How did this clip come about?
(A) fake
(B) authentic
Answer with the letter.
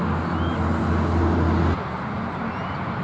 B